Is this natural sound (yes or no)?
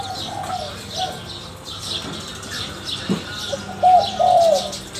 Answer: no